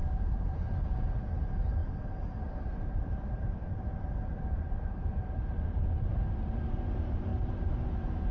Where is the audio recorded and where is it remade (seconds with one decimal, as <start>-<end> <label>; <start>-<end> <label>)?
0.0-1.4 recorded; 1.4-8.3 remade